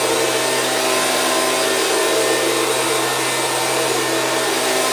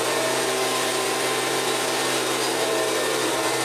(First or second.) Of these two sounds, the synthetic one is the second